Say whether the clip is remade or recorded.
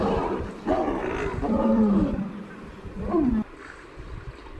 remade